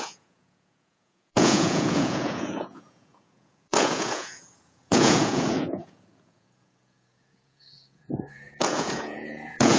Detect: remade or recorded remade